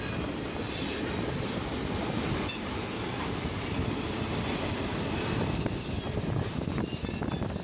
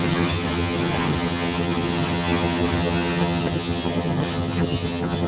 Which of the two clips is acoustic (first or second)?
first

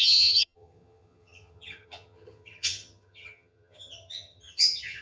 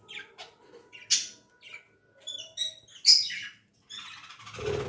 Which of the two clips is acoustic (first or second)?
second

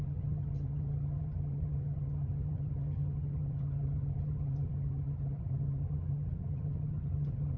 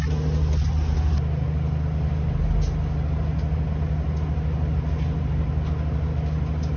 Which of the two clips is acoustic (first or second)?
second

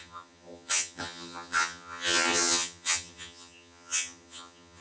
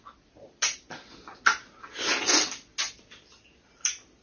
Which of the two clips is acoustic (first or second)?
second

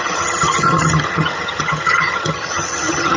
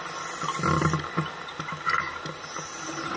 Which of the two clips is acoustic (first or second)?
second